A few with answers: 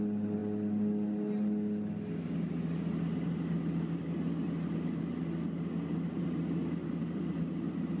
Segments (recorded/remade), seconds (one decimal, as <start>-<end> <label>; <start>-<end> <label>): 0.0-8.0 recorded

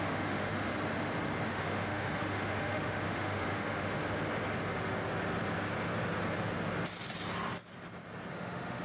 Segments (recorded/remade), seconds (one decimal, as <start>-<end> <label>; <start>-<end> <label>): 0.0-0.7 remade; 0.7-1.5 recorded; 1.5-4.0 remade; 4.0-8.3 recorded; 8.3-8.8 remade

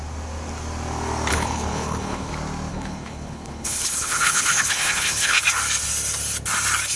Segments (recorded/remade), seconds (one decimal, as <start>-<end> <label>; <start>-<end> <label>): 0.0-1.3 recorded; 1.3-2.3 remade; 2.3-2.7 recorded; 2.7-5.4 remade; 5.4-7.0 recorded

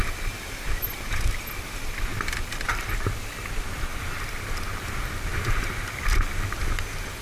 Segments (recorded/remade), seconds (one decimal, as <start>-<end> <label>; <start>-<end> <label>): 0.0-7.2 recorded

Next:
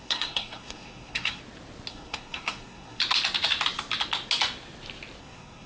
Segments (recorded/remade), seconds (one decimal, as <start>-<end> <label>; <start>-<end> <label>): 0.0-1.4 remade; 1.4-1.9 recorded; 1.9-3.0 remade; 3.0-5.2 recorded; 5.2-5.7 remade

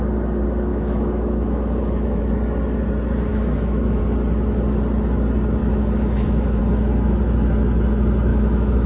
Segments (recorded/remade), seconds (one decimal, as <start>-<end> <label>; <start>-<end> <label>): 0.0-0.7 recorded; 0.7-2.2 remade; 2.2-3.3 recorded; 3.3-4.0 remade; 4.0-5.6 recorded; 5.6-6.6 remade; 6.6-8.3 recorded; 8.3-8.9 remade

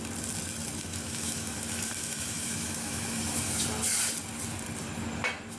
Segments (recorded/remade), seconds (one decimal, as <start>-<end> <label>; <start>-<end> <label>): 0.0-0.9 recorded; 0.9-3.6 remade; 3.6-5.6 recorded